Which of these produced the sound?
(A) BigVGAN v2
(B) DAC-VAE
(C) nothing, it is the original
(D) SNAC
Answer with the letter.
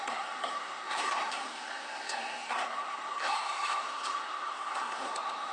D